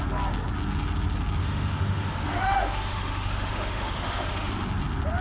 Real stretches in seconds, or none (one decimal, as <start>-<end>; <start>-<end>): 0.0-1.4; 4.5-5.2